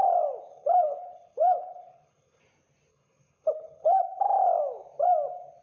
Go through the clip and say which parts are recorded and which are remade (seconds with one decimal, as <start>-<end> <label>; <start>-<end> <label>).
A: 0.0-0.5 recorded; 0.5-2.4 remade; 2.4-2.9 recorded; 2.9-4.0 remade; 4.0-5.6 recorded